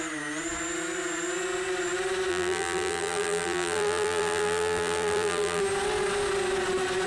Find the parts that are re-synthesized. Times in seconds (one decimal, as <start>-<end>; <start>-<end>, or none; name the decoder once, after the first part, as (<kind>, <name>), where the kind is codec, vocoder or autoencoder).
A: 2.3-5.6 (vocoder, BigVGAN v2)